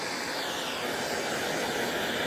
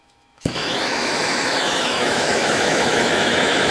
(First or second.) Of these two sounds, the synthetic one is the second